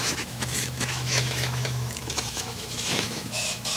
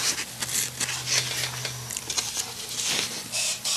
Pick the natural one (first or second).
second